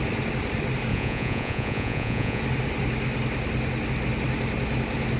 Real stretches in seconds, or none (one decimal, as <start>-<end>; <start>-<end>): 0.0-0.9; 2.4-5.2